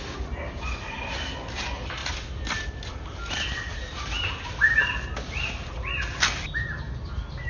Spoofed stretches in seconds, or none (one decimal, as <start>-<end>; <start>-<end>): none